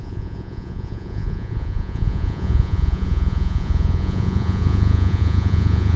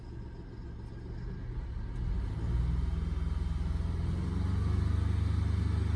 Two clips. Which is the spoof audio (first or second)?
first